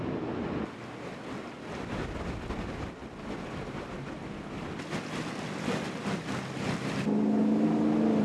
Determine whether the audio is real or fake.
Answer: real